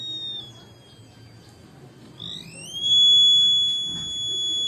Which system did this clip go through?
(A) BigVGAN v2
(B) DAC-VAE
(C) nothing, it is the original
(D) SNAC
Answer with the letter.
C